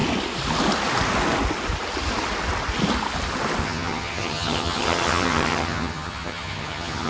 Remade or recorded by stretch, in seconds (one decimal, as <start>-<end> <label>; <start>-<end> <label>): 0.0-3.6 recorded; 3.6-7.1 remade